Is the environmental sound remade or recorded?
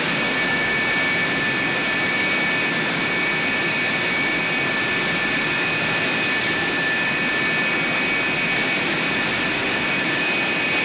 recorded